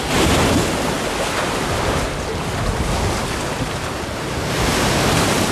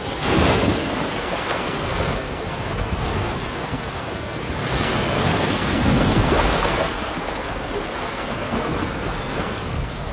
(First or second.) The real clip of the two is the first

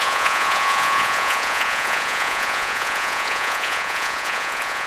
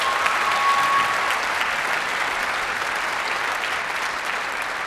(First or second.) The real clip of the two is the second